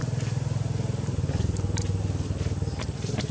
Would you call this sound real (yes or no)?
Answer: yes